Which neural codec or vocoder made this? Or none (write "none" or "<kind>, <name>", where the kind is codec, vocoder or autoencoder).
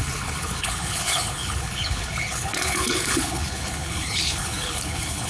codec, HILCodec